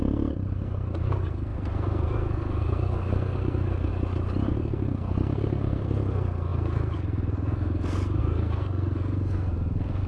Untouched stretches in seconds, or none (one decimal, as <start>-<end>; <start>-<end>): 3.9-4.5